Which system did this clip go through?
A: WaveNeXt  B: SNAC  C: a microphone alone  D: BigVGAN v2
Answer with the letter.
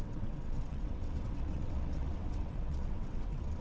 A